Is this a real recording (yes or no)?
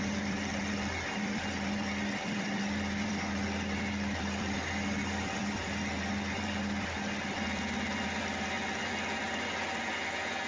no